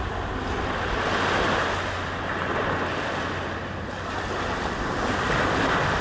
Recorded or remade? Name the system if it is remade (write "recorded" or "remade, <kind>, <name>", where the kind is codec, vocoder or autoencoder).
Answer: recorded